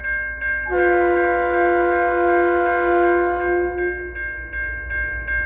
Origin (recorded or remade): recorded